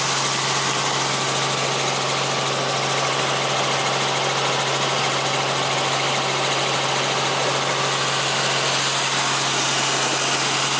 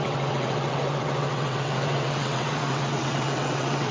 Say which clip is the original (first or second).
first